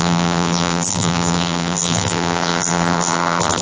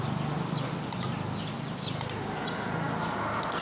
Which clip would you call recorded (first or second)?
second